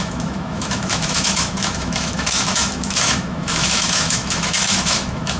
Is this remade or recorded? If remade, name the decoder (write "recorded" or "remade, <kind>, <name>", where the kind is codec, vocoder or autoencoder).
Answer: remade, autoencoder, DAC-VAE